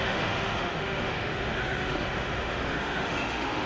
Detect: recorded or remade remade